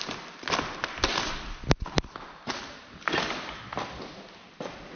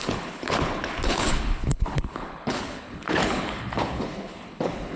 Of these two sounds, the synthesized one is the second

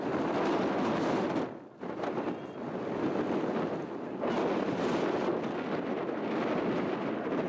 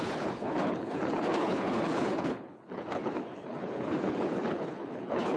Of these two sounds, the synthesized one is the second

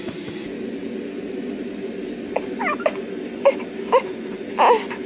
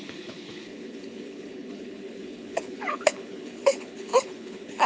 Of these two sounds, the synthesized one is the second